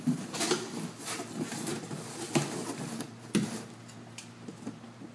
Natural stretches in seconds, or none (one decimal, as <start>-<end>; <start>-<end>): 0.0-5.1